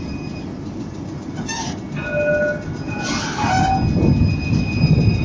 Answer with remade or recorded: recorded